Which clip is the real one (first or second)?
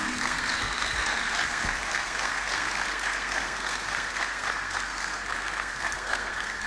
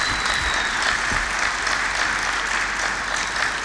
second